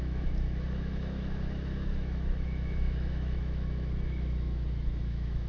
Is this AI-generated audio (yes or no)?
yes